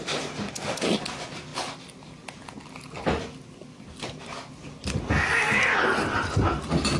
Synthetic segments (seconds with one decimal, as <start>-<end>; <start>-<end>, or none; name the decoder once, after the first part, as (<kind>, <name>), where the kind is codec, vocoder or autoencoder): none